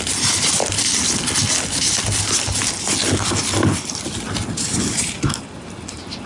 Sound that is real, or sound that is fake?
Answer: real